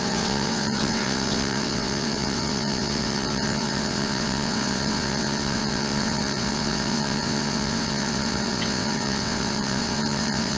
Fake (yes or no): yes